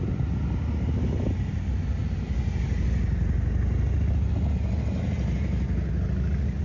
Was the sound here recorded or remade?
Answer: recorded